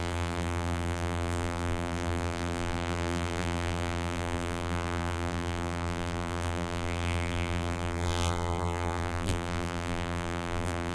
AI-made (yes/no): yes